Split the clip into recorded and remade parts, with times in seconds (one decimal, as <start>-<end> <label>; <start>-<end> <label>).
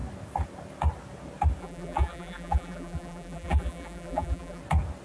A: 0.0-1.6 recorded; 1.6-4.6 remade; 4.6-5.0 recorded